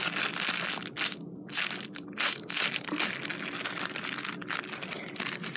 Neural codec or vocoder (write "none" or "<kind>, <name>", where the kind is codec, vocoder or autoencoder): none